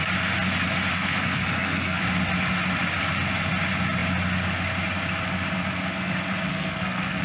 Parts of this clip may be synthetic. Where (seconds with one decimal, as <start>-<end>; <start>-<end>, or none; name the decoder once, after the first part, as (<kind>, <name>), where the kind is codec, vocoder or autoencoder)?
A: 0.9-2.0 (codec, SNAC); 6.5-7.2